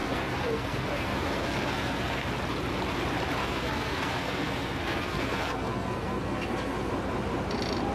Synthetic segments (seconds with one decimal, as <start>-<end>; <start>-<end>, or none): 0.0-2.3; 3.4-6.9